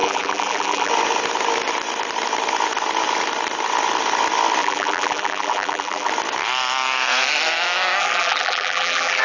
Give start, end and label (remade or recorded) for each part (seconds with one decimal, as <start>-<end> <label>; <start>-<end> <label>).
0.0-0.9 remade; 0.9-4.6 recorded; 4.6-6.1 remade; 6.1-8.0 recorded; 8.0-9.2 remade